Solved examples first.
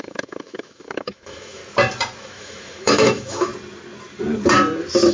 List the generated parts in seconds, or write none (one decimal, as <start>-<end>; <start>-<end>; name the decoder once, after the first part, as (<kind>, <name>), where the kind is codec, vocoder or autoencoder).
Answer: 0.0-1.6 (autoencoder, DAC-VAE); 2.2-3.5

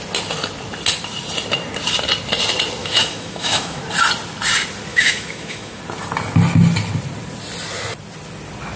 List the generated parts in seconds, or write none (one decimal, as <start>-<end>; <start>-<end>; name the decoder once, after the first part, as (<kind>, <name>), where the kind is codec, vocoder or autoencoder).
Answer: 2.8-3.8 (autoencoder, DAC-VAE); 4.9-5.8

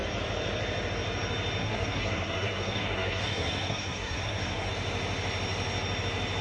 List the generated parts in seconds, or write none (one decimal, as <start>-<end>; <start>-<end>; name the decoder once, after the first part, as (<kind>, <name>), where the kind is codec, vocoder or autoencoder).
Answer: 1.6-4.7 (codec, SNAC)